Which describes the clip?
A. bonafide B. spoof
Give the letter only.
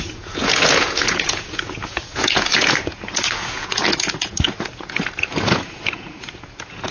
B